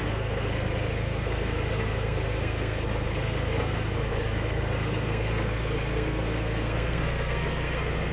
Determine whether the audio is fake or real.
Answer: fake